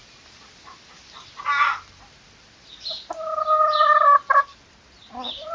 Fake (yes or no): no